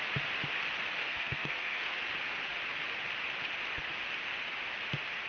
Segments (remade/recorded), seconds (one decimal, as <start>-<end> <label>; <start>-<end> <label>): 0.0-1.0 recorded; 1.0-2.0 remade; 2.0-5.3 recorded